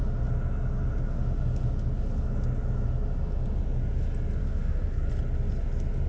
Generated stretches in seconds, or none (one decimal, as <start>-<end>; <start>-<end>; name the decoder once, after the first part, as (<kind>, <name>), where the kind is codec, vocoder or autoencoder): 4.4-5.1 (codec, SNAC)